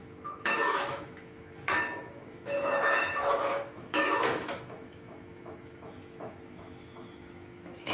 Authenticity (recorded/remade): remade